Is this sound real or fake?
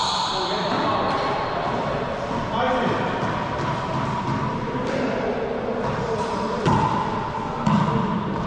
real